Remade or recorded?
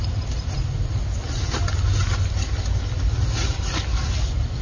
recorded